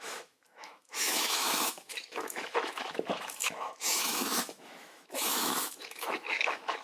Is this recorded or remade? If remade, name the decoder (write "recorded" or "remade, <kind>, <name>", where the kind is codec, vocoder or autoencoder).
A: remade, autoencoder, DAC-VAE